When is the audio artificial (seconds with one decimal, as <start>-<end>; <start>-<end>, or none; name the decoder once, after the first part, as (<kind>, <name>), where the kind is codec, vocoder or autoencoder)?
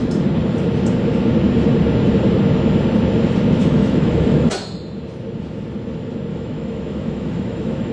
3.6-4.5 (autoencoder, DAC-VAE); 6.3-7.9